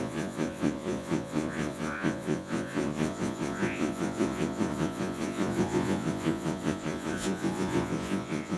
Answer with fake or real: fake